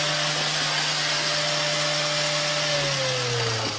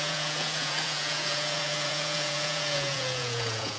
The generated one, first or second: second